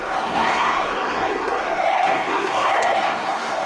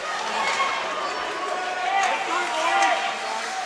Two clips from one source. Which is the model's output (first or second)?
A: first